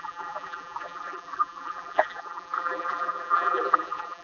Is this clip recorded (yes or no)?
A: no